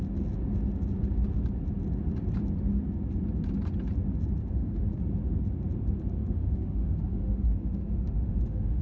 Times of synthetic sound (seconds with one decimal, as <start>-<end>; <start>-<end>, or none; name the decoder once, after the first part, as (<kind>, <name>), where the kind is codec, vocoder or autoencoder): 4.4-5.0 (autoencoder, DAC-VAE); 6.2-8.8